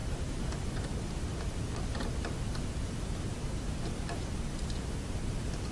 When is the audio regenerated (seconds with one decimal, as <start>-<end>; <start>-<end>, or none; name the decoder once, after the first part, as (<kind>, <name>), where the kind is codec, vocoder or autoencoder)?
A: none

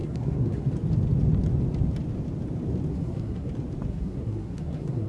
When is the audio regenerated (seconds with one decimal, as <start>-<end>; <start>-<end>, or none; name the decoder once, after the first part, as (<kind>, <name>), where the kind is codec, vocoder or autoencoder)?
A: 0.0-0.7 (codec, SNAC); 2.9-3.5; 3.9-5.1

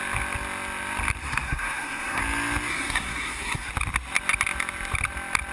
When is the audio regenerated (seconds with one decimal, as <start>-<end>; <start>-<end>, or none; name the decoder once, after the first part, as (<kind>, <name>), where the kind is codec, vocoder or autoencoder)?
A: 1.2-2.2 (codec, SNAC); 2.7-3.7

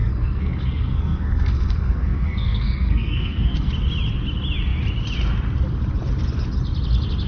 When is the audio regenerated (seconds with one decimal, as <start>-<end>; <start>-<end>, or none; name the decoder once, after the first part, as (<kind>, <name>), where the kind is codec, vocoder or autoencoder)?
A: 0.0-3.7 (codec, SNAC)

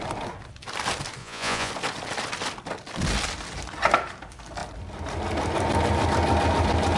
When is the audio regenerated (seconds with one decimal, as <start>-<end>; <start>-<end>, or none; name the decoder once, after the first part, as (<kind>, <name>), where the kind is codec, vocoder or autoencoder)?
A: 1.2-1.7 (vocoder, Vocos)

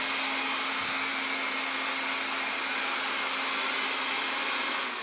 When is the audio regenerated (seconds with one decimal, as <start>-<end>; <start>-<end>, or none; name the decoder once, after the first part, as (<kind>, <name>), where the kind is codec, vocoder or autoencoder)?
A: none